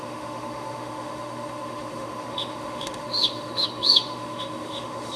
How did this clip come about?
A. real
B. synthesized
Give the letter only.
B